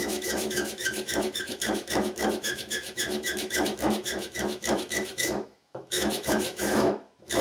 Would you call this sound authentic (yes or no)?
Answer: no